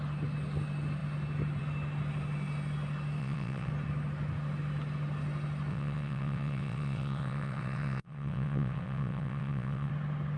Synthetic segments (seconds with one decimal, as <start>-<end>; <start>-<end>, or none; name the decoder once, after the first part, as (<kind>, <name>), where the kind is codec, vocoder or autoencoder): 3.2-3.7 (vocoder, WaveNeXt); 5.7-9.9